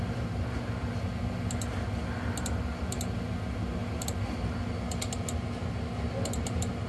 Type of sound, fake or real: real